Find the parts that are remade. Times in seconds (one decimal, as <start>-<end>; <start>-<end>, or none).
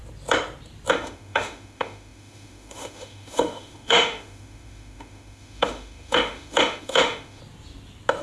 0.9-7.4